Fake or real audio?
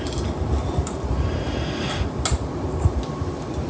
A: real